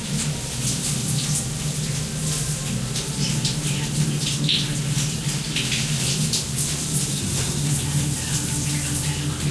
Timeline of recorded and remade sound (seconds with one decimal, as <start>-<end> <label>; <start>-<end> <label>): 0.0-7.1 recorded; 7.1-7.7 remade; 7.7-9.5 recorded